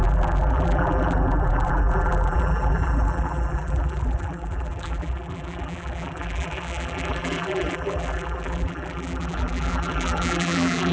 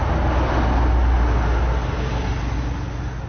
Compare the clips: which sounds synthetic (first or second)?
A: first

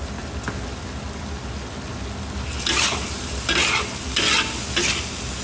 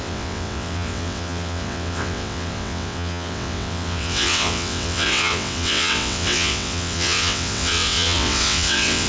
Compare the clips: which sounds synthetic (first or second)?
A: second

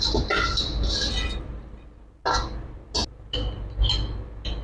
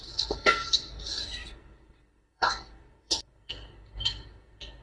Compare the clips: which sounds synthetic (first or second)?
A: second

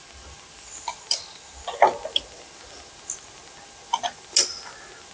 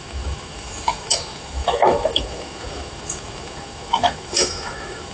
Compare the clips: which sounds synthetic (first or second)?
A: second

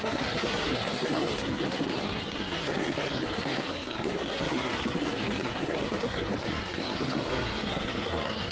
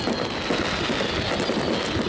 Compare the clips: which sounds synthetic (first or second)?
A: first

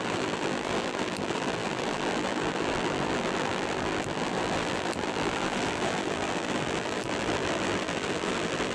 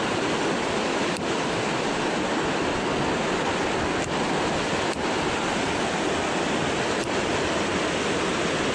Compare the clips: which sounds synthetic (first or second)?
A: first